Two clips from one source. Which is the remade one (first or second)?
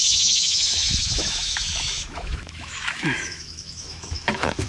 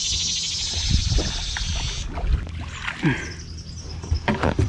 first